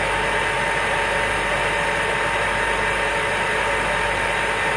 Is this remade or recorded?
recorded